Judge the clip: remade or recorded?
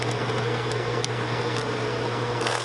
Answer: remade